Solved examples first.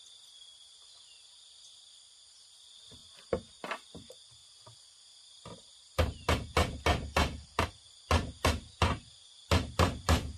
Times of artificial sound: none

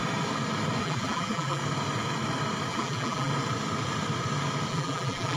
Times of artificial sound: 0.8-1.6 (vocoder, BigVGAN v2); 2.7-3.3; 4.7-5.4

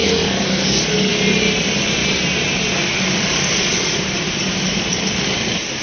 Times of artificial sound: 0.0-1.1 (codec, DAC)

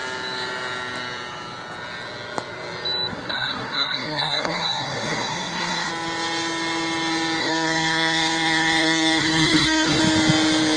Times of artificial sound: 3.1-5.9 (codec, SNAC); 7.4-10.0

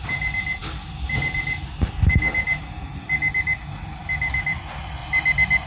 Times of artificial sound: none